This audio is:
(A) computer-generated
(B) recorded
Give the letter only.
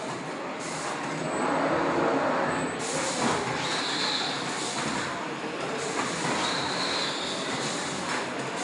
B